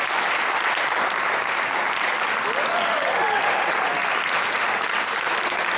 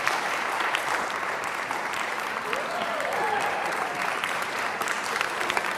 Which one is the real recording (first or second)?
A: first